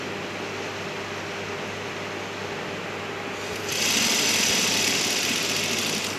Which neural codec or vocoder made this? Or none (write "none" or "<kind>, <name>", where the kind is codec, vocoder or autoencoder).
none